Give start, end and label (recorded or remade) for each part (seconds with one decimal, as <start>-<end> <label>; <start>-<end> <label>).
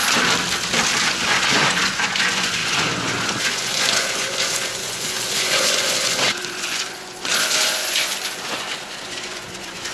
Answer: 0.0-1.0 recorded; 1.0-9.9 remade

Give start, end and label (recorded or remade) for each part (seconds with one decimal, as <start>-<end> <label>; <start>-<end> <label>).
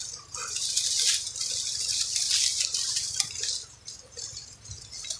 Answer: 0.0-5.2 recorded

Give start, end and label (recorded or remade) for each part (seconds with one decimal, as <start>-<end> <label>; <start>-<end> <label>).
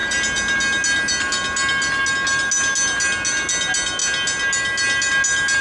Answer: 0.0-5.6 recorded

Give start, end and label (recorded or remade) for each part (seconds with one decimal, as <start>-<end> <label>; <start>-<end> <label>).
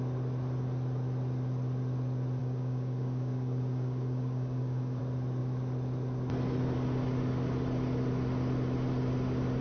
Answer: 0.0-2.4 recorded; 2.4-5.0 remade; 5.0-9.6 recorded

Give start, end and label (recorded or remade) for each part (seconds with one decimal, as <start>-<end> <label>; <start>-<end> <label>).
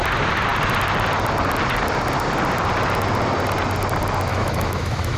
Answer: 0.0-4.3 recorded; 4.3-5.2 remade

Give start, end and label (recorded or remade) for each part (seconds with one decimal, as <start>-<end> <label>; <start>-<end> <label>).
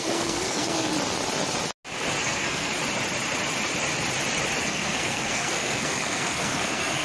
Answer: 0.0-0.9 remade; 0.9-2.2 recorded; 2.2-2.7 remade; 2.7-4.6 recorded; 4.6-7.0 remade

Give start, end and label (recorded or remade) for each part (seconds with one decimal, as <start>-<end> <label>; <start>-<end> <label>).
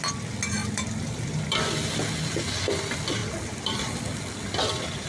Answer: 0.0-0.6 recorded; 0.6-2.0 remade; 2.0-3.2 recorded; 3.2-4.0 remade; 4.0-5.1 recorded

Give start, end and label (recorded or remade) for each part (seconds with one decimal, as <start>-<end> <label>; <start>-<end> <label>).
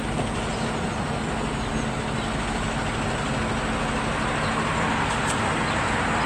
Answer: 0.0-6.3 recorded